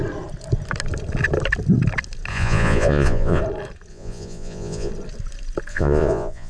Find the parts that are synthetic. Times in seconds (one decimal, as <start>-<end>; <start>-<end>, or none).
2.3-3.4; 3.9-4.9; 5.7-6.5